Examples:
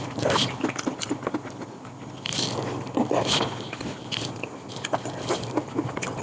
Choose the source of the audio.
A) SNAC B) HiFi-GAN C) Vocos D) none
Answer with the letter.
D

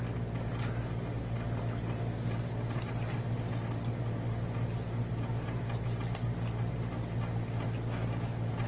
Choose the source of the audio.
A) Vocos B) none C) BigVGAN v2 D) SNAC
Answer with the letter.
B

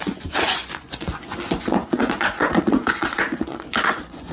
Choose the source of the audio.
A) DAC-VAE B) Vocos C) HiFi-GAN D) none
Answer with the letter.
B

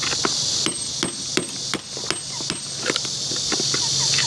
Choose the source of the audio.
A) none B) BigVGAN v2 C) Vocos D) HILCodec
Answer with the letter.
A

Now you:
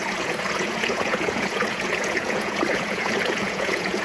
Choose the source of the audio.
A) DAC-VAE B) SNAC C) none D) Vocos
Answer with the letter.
D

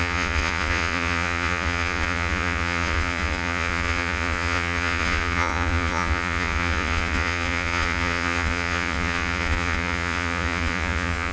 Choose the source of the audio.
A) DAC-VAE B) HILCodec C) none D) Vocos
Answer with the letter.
D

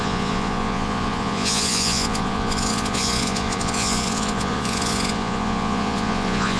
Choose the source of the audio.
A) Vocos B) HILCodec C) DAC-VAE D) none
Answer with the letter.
A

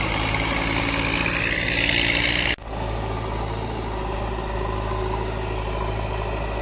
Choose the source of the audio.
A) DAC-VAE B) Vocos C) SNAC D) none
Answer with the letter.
D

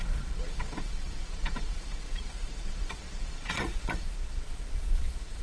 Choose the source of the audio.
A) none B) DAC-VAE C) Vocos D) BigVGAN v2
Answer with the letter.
C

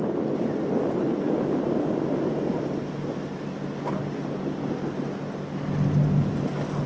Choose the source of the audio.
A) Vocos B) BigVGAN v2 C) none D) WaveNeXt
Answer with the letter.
C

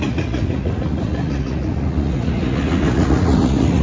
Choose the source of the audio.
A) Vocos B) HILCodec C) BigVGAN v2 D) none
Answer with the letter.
A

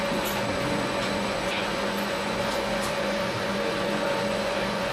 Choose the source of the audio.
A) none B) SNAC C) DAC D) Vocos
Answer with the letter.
D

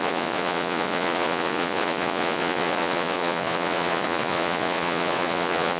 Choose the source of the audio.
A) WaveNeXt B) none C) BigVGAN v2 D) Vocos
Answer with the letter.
D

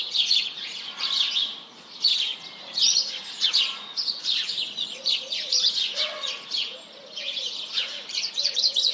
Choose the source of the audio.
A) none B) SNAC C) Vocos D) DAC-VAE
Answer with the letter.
C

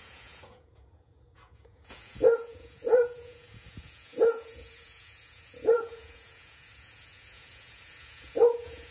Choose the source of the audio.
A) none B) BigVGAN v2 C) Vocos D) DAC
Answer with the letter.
C